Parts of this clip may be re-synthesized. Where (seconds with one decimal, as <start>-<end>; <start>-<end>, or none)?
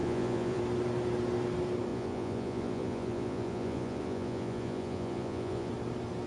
0.0-0.6; 1.9-5.7